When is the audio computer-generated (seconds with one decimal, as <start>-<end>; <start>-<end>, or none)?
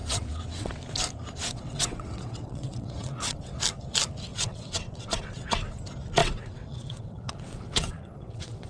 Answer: 0.0-0.7; 1.4-3.6; 4.3-5.8; 6.2-8.7